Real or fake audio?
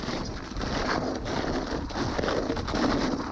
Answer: real